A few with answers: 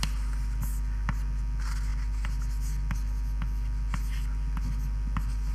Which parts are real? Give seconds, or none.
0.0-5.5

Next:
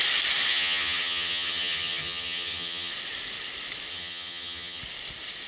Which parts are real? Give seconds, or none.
0.0-0.5; 2.9-3.9; 4.8-5.5

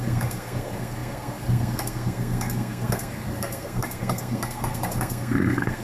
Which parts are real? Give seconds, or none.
none

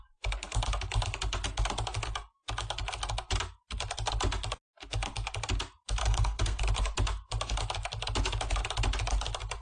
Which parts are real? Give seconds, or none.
0.0-6.0; 6.6-9.6

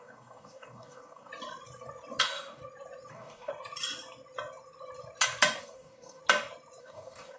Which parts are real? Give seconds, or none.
1.3-2.2; 2.6-3.1; 3.5-5.6; 6.2-6.8